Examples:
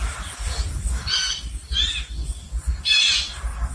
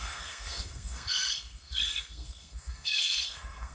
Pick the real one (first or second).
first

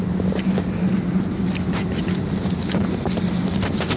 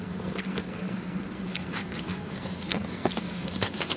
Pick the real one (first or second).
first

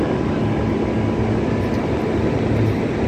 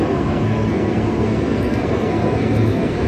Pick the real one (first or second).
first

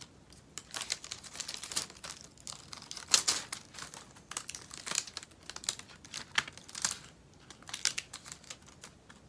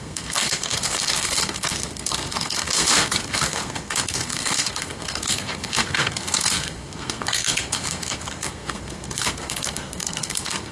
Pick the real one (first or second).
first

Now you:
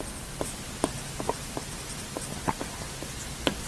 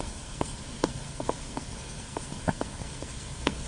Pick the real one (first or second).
first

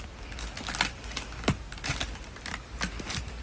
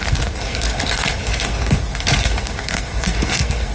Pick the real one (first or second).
first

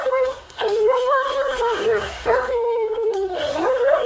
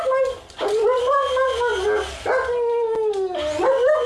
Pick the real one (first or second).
second